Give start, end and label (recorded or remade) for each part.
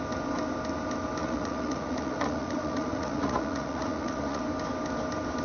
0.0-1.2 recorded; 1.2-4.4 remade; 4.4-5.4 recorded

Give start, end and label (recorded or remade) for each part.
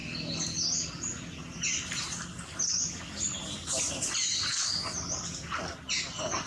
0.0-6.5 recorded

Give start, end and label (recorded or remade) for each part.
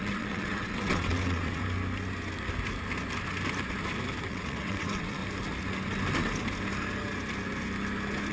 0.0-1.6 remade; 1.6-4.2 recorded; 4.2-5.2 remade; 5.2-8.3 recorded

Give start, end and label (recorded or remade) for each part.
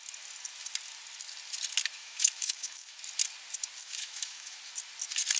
0.0-2.0 recorded; 2.0-3.0 remade; 3.0-3.8 recorded; 3.8-4.6 remade; 4.6-5.4 recorded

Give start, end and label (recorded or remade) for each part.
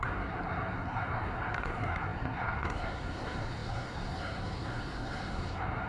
0.0-5.9 remade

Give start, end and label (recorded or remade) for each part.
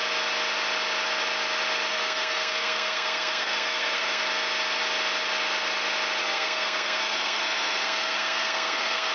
0.0-1.9 recorded; 1.9-4.2 remade; 4.2-6.2 recorded; 6.2-9.1 remade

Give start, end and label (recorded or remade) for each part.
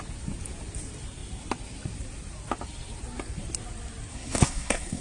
0.0-4.1 recorded; 4.1-5.0 remade